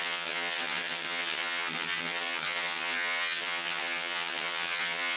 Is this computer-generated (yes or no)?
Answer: yes